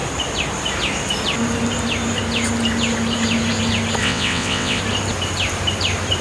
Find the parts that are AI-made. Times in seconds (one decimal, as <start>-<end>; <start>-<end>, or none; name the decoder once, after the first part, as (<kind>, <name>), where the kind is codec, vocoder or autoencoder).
4.0-4.8 (vocoder, WaveNeXt)

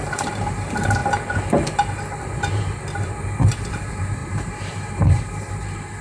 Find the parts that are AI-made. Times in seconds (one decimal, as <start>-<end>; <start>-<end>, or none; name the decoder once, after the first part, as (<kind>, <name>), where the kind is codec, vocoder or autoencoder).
0.0-1.0 (vocoder, BigVGAN v2); 3.7-6.0

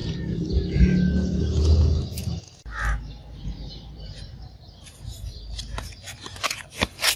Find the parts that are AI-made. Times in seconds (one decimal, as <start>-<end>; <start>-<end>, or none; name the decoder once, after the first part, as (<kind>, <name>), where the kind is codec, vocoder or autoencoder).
3.2-5.4 (vocoder, BigVGAN v2)

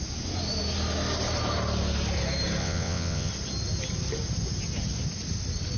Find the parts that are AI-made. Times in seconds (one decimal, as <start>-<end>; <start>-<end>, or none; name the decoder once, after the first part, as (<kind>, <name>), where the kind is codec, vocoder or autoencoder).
2.6-3.3 (vocoder, WaveNeXt)

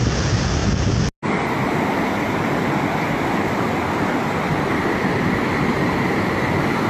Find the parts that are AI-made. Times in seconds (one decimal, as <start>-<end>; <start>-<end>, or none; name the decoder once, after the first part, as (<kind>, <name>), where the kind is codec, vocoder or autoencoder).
none